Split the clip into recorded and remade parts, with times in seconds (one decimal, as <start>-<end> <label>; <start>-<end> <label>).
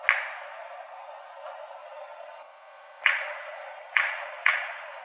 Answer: 0.0-1.8 recorded; 1.8-5.0 remade